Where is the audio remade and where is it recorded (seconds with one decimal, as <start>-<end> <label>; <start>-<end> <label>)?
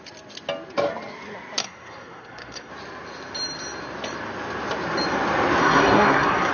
0.0-1.6 recorded; 1.6-2.7 remade; 2.7-5.6 recorded; 5.6-6.5 remade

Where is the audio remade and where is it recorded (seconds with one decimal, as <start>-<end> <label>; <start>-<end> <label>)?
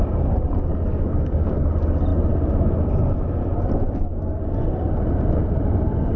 0.0-1.1 recorded; 1.1-1.7 remade; 1.7-6.2 recorded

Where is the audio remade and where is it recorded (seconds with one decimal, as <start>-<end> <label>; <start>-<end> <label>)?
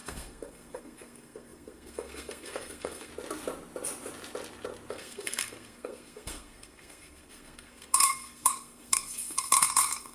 0.0-3.1 remade; 3.1-4.9 recorded; 4.9-10.1 remade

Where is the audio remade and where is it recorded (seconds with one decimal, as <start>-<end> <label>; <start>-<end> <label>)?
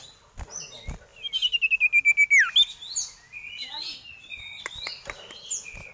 0.0-5.9 recorded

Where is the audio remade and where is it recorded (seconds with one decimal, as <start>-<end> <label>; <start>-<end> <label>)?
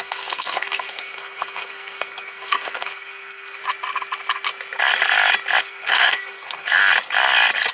0.0-3.6 remade; 3.6-5.6 recorded; 5.6-6.8 remade; 6.8-7.7 recorded